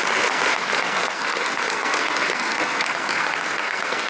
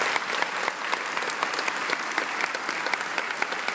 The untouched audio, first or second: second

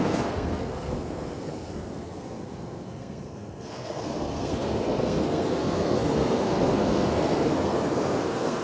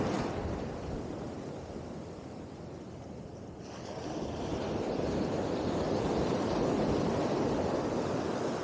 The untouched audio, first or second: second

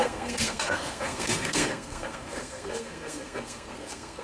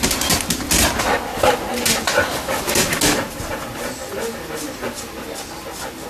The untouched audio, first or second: second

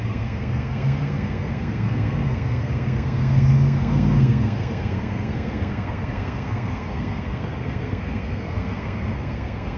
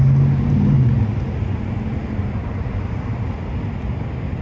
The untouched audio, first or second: second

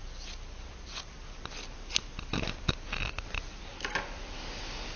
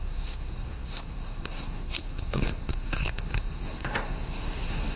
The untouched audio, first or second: first